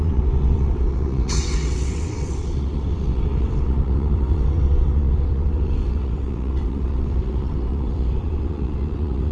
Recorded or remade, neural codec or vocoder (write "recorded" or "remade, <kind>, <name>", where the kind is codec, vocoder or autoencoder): remade, vocoder, WaveNeXt